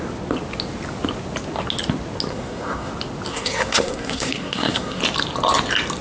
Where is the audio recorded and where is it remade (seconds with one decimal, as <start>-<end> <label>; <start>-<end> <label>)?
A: 0.0-2.3 recorded; 2.3-2.9 remade; 2.9-3.3 recorded; 3.3-5.0 remade; 5.0-6.0 recorded